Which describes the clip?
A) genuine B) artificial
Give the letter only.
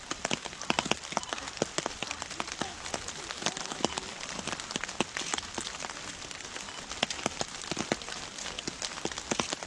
A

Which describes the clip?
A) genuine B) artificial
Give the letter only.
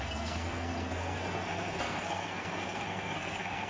B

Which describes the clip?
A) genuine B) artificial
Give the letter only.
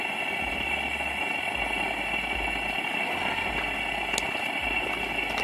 A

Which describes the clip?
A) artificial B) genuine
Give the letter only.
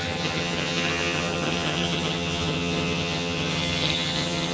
A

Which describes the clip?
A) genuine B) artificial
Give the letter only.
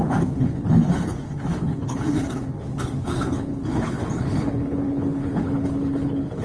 B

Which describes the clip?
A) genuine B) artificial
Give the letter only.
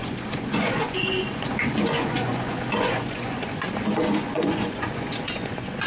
B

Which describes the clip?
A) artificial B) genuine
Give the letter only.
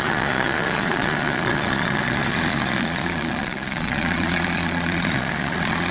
A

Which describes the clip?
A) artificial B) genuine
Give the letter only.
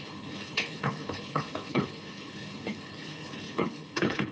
A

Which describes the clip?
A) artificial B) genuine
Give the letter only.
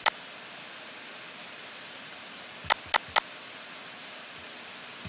B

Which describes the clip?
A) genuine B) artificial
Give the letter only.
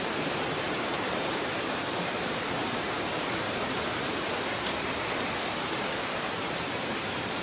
B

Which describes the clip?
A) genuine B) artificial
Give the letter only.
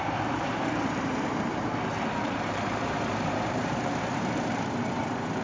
B